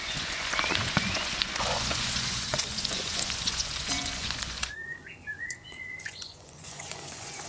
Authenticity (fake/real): fake